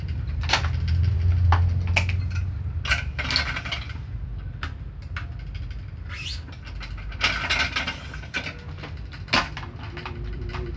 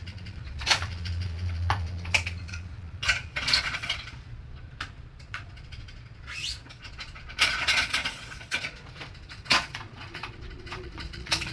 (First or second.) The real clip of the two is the first